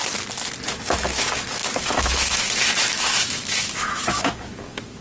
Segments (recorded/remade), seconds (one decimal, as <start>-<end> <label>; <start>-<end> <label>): 0.0-0.7 recorded; 0.7-5.0 remade